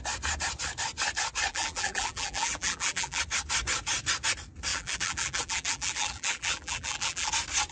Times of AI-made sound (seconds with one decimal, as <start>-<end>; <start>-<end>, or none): 1.5-3.2; 4.7-7.3